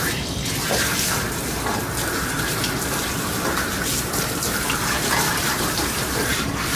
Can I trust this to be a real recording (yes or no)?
no